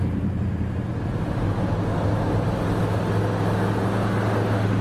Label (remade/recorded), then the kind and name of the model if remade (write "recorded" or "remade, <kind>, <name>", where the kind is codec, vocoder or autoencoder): recorded